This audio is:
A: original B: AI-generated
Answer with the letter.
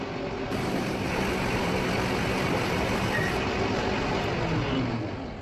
A